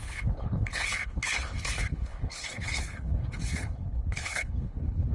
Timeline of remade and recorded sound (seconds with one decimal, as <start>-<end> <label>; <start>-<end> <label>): 0.0-5.1 remade